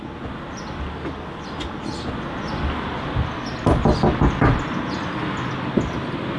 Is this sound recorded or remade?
recorded